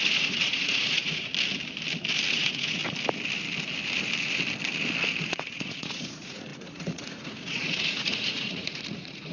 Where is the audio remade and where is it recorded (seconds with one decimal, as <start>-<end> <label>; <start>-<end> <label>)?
0.0-1.3 remade; 1.3-2.3 recorded; 2.3-2.8 remade; 2.8-5.2 recorded; 5.2-9.3 remade